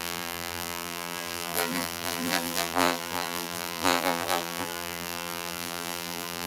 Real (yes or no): no